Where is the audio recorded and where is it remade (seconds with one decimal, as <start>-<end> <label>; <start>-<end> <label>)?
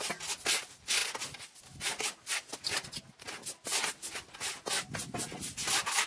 0.0-6.1 recorded